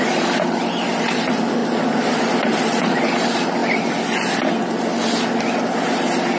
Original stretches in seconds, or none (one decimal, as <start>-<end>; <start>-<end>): 3.6-6.4